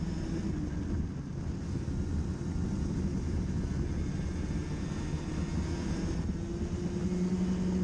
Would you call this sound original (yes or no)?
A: yes